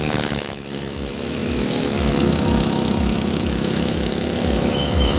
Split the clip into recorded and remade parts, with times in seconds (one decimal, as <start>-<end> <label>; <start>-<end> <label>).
0.0-5.2 remade